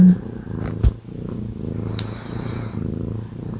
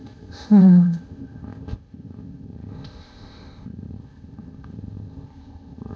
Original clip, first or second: first